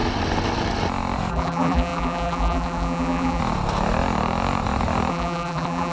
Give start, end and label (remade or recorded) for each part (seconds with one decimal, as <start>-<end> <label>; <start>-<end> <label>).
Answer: 0.0-1.3 recorded; 1.3-3.4 remade; 3.4-5.1 recorded; 5.1-5.9 remade